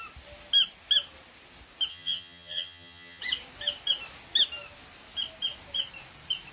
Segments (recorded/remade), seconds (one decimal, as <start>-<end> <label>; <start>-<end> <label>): 0.0-1.9 recorded; 1.9-3.2 remade; 3.2-6.5 recorded